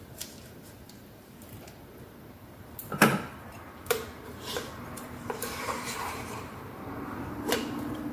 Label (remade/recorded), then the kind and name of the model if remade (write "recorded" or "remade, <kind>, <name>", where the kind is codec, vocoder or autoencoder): remade, vocoder, BigVGAN v2